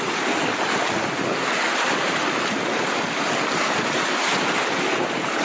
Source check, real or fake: real